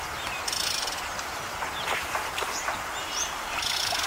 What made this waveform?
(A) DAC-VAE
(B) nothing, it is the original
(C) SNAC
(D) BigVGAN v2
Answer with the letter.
B